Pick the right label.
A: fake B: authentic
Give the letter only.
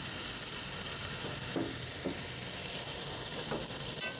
B